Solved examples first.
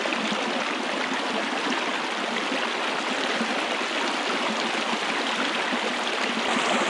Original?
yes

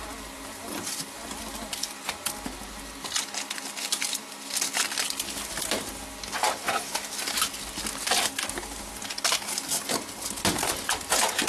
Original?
yes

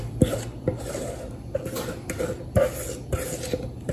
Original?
yes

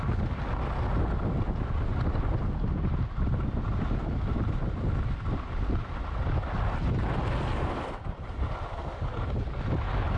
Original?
yes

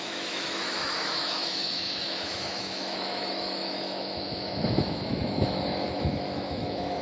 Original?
no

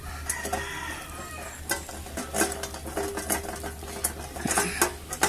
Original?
yes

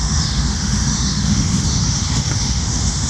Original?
no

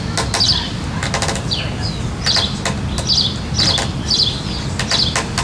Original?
yes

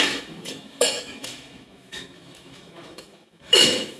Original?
no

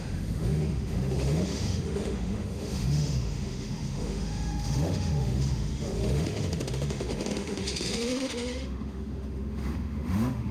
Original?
no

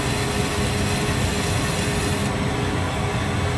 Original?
yes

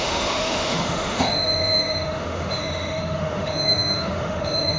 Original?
no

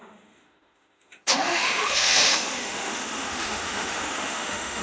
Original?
no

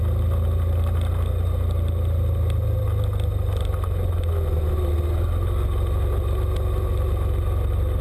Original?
yes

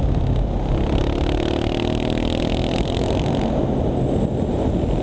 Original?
yes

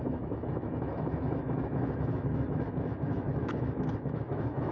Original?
no